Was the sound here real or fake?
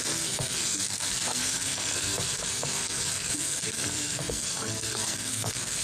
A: fake